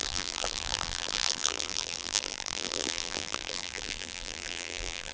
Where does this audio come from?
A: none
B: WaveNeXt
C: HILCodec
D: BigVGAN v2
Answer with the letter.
D